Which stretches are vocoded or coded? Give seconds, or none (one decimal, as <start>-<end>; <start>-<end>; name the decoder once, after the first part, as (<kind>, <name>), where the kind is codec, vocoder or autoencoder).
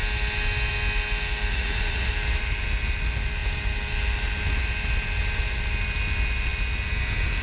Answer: 1.5-2.1 (vocoder, Vocos)